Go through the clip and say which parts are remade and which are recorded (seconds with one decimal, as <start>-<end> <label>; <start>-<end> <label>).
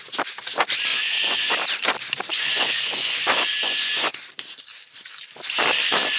0.0-0.9 recorded; 0.9-1.5 remade; 1.5-2.3 recorded; 2.3-4.2 remade; 4.2-6.2 recorded